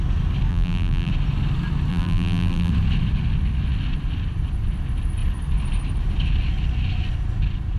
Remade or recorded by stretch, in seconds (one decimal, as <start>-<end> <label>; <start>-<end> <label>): 0.0-0.5 recorded; 0.5-1.1 remade; 1.1-1.9 recorded; 1.9-2.7 remade; 2.7-7.8 recorded